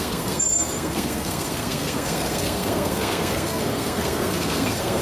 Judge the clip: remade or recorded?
remade